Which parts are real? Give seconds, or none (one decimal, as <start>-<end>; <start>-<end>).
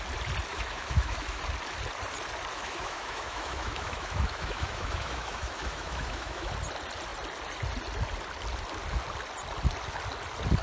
0.0-0.5; 1.4-2.5; 6.5-10.6